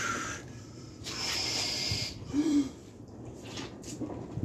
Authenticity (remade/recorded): remade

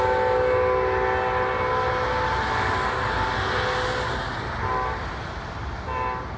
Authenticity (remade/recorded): recorded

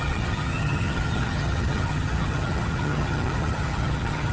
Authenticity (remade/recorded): remade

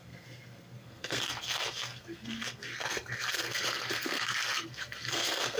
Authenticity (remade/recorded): remade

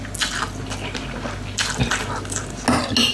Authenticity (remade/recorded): recorded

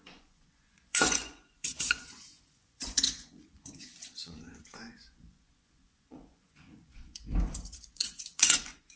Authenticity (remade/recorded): remade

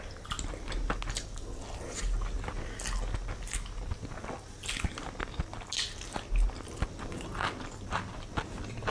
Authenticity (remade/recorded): recorded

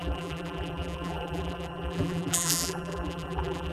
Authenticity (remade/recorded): remade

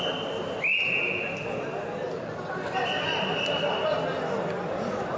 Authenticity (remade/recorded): recorded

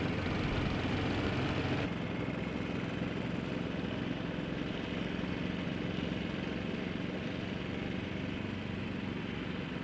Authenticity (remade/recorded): recorded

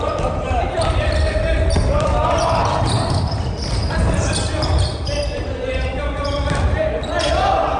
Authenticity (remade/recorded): remade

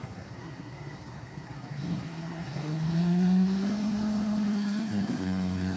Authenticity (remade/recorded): remade